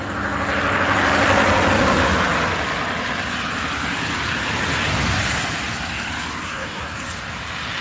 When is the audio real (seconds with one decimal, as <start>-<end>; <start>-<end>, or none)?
0.0-6.4; 7.1-7.8